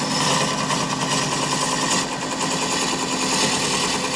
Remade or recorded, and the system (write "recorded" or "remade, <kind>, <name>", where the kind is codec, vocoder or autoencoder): recorded